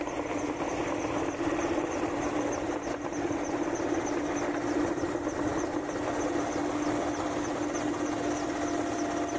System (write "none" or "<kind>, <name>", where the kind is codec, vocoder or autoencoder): none